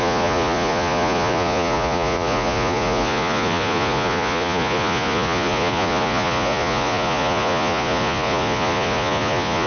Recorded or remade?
remade